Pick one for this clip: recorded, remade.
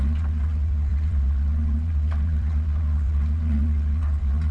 remade